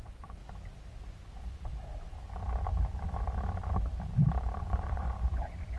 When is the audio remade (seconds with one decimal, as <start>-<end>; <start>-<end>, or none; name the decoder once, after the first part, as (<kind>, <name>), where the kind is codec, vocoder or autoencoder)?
0.0-0.4 (vocoder, Vocos); 1.1-1.7; 4.6-5.8